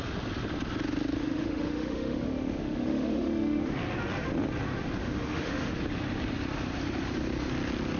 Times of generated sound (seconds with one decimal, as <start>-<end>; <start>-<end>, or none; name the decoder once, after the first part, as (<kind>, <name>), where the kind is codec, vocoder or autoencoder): 1.2-3.7 (autoencoder, DAC-VAE); 5.0-5.7

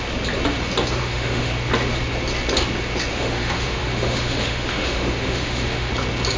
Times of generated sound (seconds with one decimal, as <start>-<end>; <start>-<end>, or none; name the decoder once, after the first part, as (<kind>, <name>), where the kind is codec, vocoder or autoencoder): 1.0-1.5 (autoencoder, DAC-VAE); 3.1-5.9